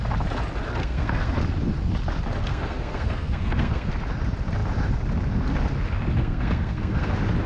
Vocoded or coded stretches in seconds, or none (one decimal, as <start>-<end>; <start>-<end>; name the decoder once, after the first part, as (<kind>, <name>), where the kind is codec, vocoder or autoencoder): 0.8-1.4 (codec, SNAC); 2.5-3.9; 6.2-7.1